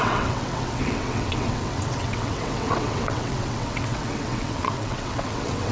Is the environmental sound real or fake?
fake